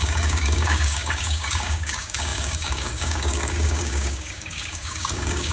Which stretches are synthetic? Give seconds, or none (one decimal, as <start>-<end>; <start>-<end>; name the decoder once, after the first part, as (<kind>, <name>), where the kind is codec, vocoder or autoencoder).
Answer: 0.0-5.5 (codec, DAC)